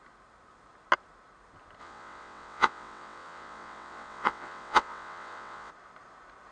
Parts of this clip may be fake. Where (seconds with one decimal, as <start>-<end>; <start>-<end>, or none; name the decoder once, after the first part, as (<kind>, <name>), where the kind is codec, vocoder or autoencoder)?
1.8-5.7 (vocoder, WaveNeXt)